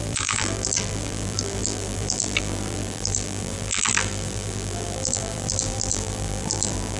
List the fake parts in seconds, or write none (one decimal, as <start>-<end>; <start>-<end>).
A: 0.0-7.0